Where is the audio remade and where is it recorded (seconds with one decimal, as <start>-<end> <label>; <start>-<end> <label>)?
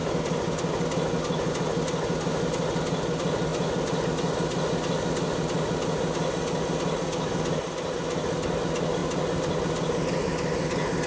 0.0-11.1 recorded